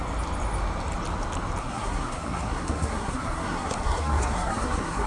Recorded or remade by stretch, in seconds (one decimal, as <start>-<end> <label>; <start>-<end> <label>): 0.0-1.6 recorded; 1.6-5.1 remade